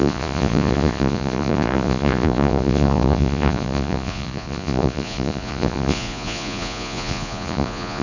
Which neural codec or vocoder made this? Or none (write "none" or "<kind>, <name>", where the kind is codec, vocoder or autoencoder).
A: vocoder, Vocos